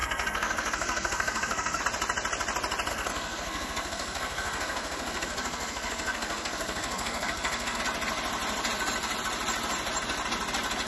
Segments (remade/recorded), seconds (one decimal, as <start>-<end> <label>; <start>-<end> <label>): 0.0-1.8 remade; 1.8-2.9 recorded; 2.9-7.8 remade; 7.8-10.9 recorded